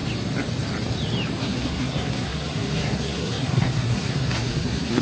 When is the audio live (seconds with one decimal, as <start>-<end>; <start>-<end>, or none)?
0.0-1.4